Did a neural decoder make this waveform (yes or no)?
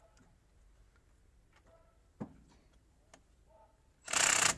no